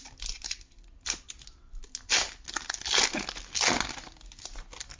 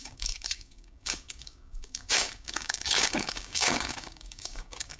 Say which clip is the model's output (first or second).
second